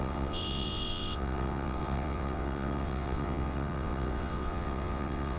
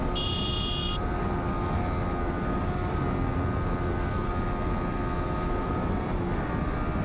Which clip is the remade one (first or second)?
first